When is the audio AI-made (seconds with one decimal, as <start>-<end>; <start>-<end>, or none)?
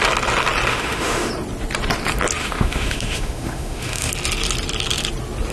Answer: 0.7-1.3; 2.4-4.1